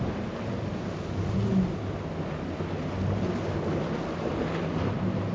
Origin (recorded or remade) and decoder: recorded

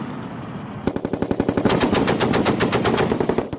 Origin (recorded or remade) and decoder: recorded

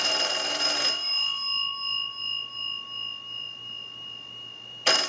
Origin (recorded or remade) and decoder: recorded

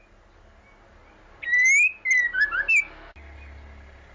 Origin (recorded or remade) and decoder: recorded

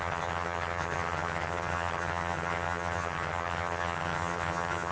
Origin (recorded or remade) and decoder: remade, vocoder, HiFi-GAN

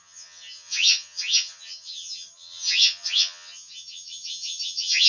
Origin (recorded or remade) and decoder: remade, vocoder, HiFi-GAN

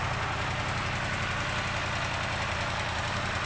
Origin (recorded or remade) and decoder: recorded